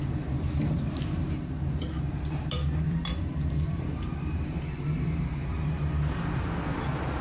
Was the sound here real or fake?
fake